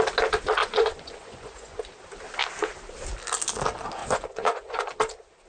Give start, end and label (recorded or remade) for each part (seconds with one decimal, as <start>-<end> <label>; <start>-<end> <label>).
0.0-0.6 recorded; 0.6-1.8 remade; 1.8-4.0 recorded; 4.0-4.9 remade; 4.9-5.5 recorded